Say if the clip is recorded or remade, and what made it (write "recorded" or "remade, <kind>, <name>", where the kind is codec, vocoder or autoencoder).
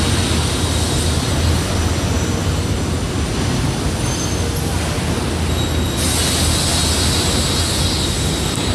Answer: recorded